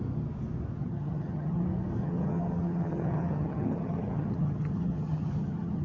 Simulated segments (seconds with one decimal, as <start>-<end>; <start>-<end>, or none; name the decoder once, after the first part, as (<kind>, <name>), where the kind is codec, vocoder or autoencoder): 0.8-1.6 (vocoder, HiFi-GAN); 2.0-5.8